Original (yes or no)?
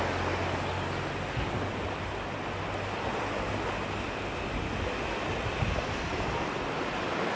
yes